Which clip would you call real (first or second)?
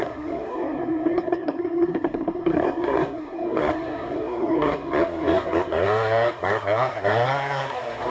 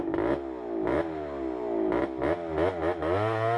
second